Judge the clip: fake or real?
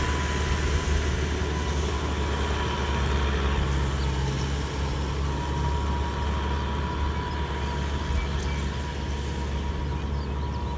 real